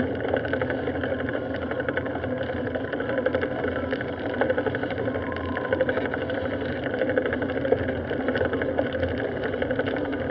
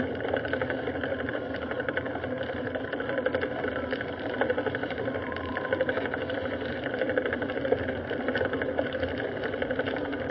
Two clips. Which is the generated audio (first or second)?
second